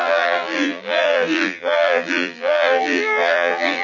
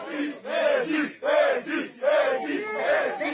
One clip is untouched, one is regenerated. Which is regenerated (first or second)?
first